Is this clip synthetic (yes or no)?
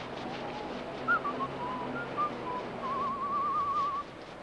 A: no